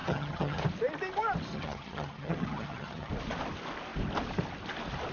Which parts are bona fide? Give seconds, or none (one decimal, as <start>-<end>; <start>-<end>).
0.6-1.5; 3.1-5.1